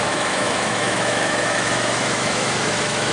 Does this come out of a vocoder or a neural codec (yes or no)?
yes